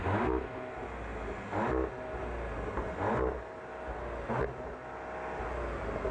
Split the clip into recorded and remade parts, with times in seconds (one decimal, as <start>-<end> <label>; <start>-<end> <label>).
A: 0.0-6.1 recorded